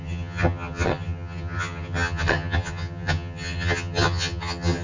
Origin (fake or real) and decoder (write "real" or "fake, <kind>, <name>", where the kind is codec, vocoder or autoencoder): fake, vocoder, HiFi-GAN